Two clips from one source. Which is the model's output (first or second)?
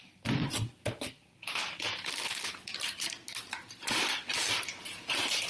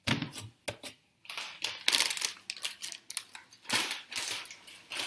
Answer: first